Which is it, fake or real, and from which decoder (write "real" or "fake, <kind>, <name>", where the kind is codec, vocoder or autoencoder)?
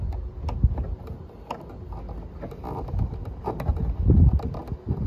real